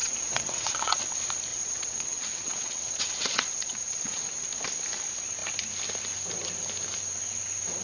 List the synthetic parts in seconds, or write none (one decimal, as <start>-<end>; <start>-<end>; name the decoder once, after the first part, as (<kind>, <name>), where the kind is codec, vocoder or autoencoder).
0.0-1.0 (vocoder, WaveNeXt); 1.5-4.2